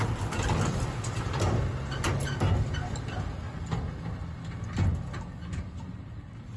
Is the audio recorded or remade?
recorded